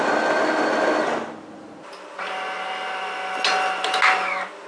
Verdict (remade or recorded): recorded